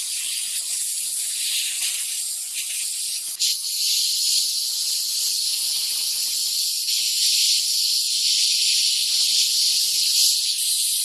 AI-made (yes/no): no